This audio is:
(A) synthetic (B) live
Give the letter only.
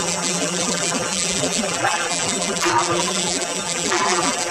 A